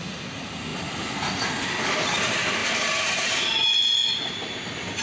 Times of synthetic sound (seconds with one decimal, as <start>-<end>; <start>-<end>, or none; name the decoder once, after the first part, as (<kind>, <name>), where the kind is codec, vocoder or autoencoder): 2.6-3.4 (vocoder, BigVGAN v2)